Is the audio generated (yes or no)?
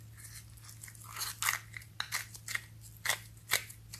no